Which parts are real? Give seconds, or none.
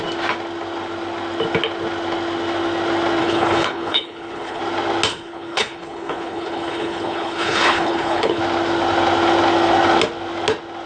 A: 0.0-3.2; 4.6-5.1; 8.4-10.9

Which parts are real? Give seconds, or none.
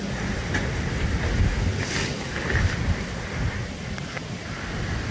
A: 0.0-5.1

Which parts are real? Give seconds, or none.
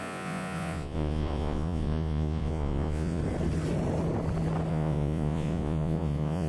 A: 3.2-4.7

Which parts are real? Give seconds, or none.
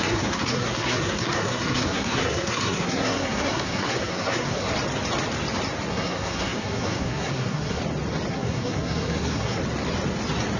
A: 4.7-5.9; 7.8-8.3; 9.6-10.6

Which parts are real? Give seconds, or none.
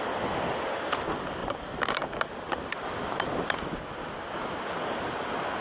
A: 0.0-1.4; 2.3-5.6